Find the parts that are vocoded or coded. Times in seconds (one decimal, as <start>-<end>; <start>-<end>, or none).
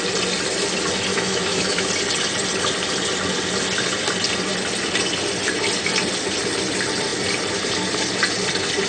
1.1-1.9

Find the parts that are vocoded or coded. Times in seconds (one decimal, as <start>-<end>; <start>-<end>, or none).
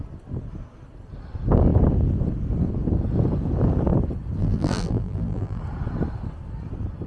4.4-5.6